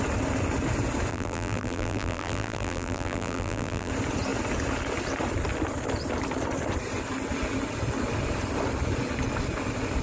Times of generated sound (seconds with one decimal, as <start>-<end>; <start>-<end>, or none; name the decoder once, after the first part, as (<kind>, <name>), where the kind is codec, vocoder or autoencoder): 1.1-3.9 (vocoder, BigVGAN v2)